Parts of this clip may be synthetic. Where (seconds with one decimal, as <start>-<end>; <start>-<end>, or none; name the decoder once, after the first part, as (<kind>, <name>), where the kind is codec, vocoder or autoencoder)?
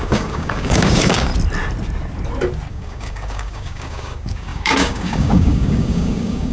0.0-1.3 (codec, DAC); 2.7-6.5